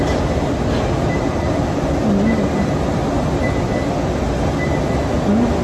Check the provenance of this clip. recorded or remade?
recorded